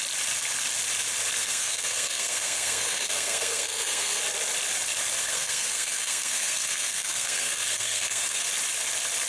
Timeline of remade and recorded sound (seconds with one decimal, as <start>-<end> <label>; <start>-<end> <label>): 0.0-1.4 recorded; 1.4-4.2 remade; 4.2-5.2 recorded; 5.2-8.5 remade; 8.5-9.3 recorded